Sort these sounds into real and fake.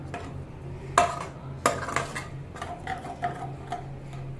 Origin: real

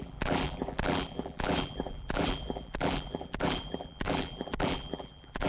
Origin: fake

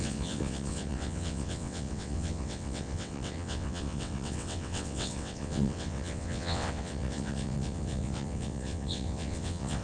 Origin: fake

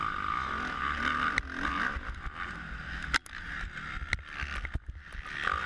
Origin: real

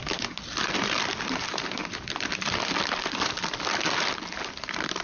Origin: fake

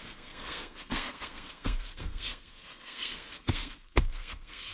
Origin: fake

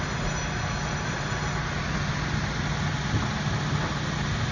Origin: real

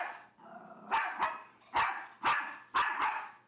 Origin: real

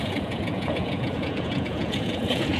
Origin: fake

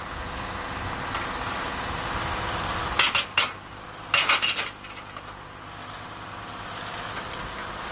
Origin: real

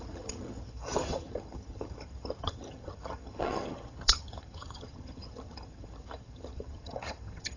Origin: fake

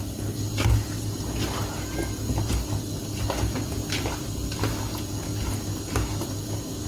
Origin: real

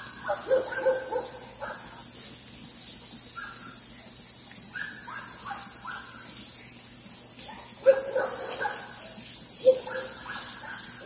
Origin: real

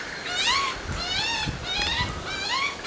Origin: real